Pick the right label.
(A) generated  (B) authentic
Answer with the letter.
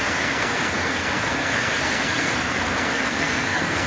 A